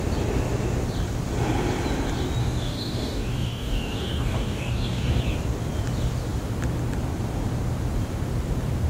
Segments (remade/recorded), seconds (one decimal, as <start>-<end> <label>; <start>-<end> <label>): 0.0-2.4 recorded; 2.4-5.2 remade; 5.2-8.9 recorded